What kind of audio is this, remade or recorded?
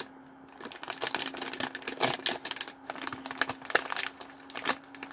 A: recorded